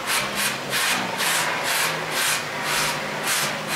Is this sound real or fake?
real